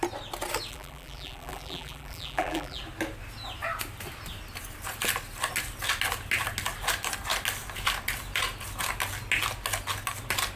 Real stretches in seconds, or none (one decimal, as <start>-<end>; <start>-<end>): 0.0-0.7; 2.8-10.6